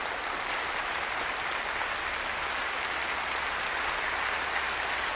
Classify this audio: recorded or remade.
recorded